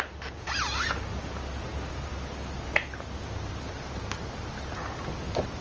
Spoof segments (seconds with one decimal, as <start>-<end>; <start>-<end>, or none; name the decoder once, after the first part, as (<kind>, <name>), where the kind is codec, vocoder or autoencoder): none